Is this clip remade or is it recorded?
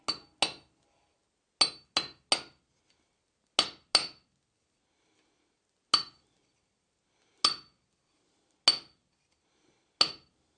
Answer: recorded